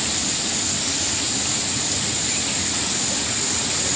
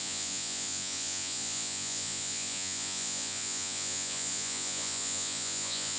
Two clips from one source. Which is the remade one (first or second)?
second